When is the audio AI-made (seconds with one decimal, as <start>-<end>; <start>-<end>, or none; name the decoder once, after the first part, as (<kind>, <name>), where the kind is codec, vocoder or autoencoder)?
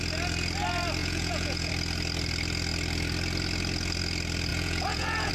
1.0-1.7 (vocoder, Vocos); 4.5-5.3